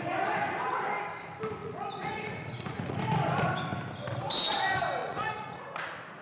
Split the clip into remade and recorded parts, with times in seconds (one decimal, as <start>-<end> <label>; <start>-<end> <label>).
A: 0.0-1.6 recorded; 1.6-3.0 remade; 3.0-5.0 recorded; 5.0-5.6 remade; 5.6-6.2 recorded